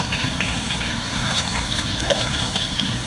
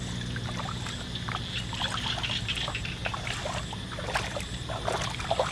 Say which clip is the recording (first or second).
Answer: second